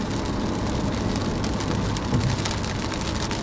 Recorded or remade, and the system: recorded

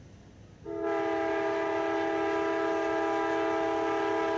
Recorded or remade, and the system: recorded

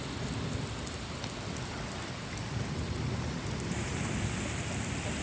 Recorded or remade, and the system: recorded